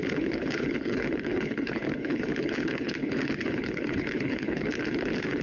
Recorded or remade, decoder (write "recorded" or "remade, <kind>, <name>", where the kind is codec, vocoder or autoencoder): remade, codec, HILCodec